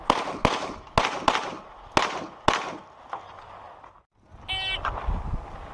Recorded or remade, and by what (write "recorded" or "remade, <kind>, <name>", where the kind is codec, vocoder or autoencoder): recorded